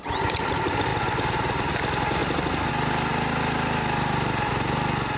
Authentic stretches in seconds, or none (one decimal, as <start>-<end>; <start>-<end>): 0.0-5.2